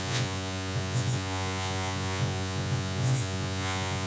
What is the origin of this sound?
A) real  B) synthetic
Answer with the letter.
B